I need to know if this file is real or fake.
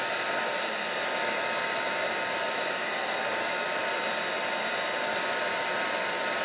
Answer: real